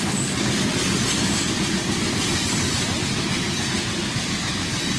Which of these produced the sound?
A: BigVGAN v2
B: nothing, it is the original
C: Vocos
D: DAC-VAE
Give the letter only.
B